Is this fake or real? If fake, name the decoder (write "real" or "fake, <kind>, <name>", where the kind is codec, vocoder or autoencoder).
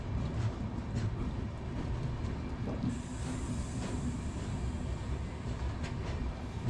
real